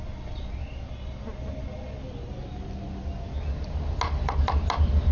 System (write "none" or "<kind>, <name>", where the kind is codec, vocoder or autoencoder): none